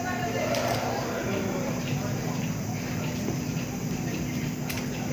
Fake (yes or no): yes